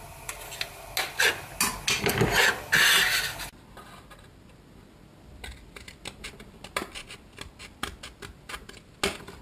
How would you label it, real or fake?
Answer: real